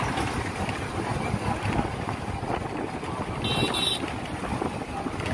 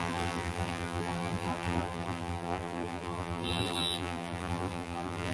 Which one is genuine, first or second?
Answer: first